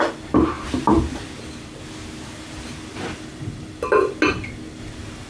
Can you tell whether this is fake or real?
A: real